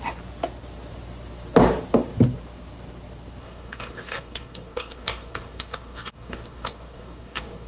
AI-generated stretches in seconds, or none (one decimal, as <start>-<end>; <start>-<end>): 3.4-7.7